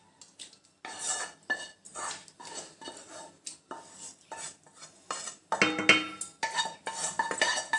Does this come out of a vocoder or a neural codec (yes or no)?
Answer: no